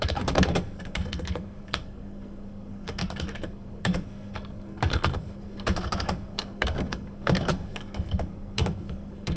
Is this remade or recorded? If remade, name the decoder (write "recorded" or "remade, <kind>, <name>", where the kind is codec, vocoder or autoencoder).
remade, codec, SNAC